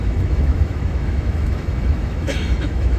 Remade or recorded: remade